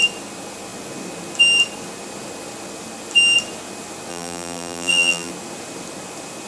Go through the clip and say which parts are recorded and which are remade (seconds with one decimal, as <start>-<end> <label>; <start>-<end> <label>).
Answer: 0.0-4.1 recorded; 4.1-5.3 remade; 5.3-6.5 recorded